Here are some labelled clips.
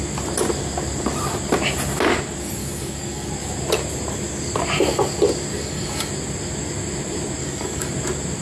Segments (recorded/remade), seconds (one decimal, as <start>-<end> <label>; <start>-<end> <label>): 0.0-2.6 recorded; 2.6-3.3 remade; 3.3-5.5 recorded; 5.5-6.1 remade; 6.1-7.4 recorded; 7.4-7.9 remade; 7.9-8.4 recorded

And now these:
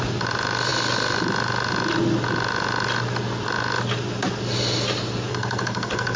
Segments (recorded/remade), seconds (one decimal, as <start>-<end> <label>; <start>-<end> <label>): 0.0-5.3 recorded; 5.3-6.2 remade

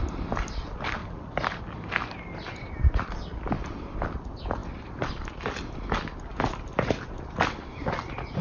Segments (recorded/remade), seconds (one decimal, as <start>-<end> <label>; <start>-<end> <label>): 0.0-8.4 recorded

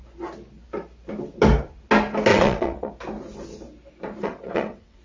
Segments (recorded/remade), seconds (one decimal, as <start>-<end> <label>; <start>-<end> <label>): 0.0-2.3 recorded; 2.3-2.9 remade; 2.9-4.2 recorded; 4.2-5.0 remade

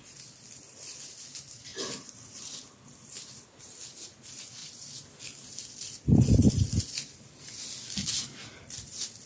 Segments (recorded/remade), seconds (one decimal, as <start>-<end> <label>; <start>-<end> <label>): 0.0-1.7 recorded; 1.7-2.5 remade; 2.5-4.6 recorded; 4.6-7.5 remade; 7.5-9.3 recorded